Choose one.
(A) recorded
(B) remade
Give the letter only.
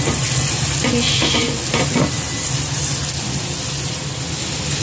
A